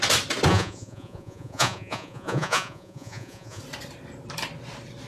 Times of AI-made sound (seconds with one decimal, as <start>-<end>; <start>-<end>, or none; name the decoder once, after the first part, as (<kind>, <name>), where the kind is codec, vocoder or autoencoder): 0.5-3.6 (vocoder, Vocos)